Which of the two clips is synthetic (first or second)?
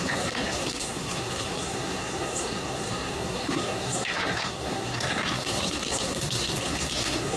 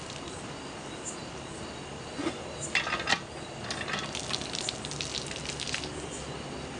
first